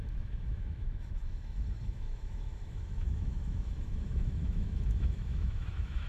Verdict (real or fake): fake